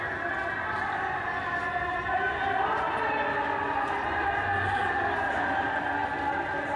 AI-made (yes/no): yes